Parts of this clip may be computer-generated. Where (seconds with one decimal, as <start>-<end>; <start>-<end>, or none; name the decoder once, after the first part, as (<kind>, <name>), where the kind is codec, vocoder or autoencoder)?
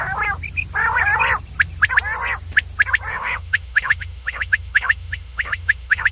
3.1-6.1 (autoencoder, DAC-VAE)